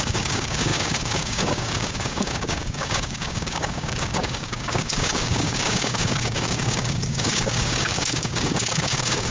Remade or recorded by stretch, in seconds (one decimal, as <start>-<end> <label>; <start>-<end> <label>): 0.0-9.3 remade